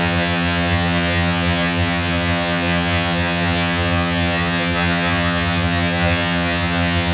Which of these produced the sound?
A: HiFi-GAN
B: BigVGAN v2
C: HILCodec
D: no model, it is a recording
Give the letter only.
A